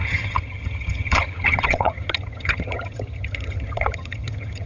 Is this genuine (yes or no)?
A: no